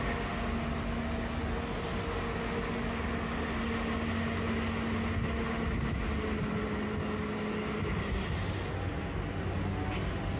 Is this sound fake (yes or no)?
no